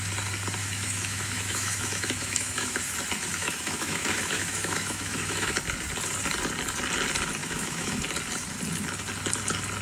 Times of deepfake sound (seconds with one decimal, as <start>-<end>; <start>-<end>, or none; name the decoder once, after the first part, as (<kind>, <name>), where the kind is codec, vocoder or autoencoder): 0.6-2.8 (autoencoder, DAC-VAE); 3.4-5.6; 7.4-8.0